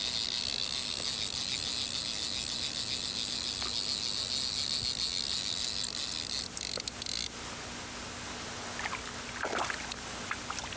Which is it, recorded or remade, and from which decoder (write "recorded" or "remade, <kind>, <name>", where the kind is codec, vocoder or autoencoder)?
recorded